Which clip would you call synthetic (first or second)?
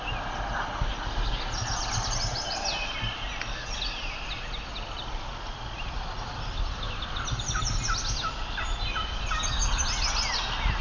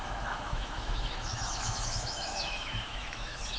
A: second